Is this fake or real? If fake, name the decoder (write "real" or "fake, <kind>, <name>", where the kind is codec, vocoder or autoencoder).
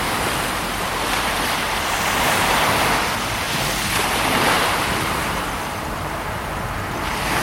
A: fake, vocoder, BigVGAN v2